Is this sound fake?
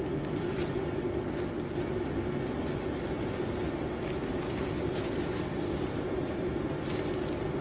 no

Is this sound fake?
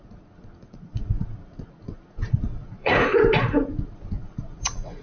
yes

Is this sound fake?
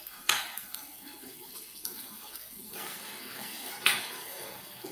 yes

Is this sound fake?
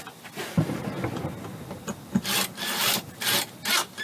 no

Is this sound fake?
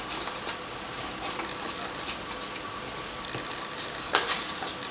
no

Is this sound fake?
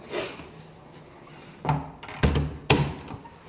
no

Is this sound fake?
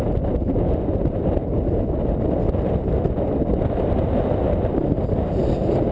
no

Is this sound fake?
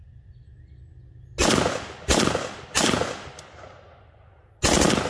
no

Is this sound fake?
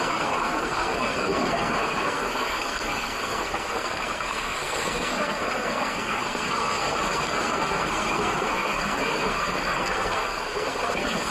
yes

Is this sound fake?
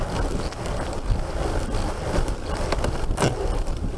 no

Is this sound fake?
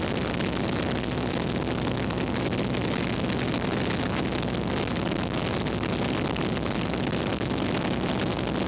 no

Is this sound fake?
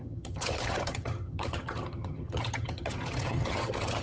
yes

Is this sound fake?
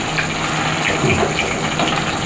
no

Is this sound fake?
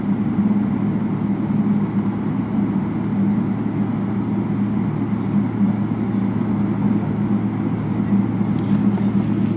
no